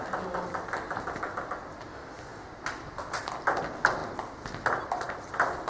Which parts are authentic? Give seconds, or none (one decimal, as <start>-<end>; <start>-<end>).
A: 0.0-2.3; 3.2-5.7